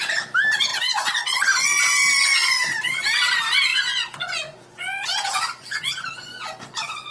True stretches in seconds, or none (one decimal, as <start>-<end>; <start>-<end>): 0.0-0.7; 3.0-3.7